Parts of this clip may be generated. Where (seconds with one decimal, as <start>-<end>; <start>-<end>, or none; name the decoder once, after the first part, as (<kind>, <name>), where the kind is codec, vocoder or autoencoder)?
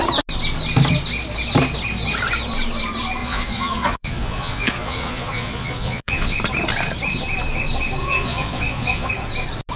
3.2-6.4 (vocoder, Vocos); 8.0-9.1